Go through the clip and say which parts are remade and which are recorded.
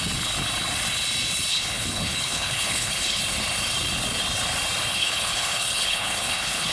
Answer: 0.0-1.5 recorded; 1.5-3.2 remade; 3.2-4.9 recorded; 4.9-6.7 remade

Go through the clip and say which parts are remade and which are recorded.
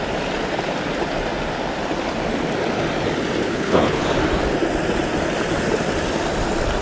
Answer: 0.0-3.4 recorded; 3.4-4.0 remade; 4.0-6.8 recorded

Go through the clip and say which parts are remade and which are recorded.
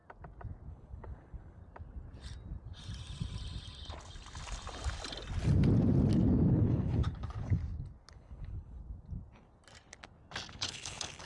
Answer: 0.0-0.7 recorded; 0.7-1.6 remade; 1.6-6.5 recorded; 6.5-7.6 remade; 7.6-8.1 recorded; 8.1-8.8 remade; 8.8-10.5 recorded; 10.5-11.3 remade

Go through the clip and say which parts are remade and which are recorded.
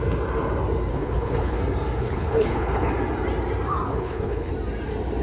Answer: 0.0-0.9 recorded; 0.9-1.6 remade; 1.6-2.0 recorded; 2.0-2.9 remade; 2.9-3.9 recorded; 3.9-4.5 remade; 4.5-5.2 recorded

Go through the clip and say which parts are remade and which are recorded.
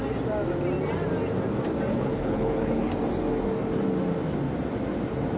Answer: 0.0-1.9 recorded; 1.9-2.9 remade; 2.9-5.4 recorded